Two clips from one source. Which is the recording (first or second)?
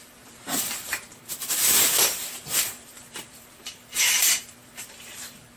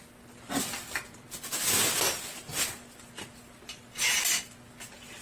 second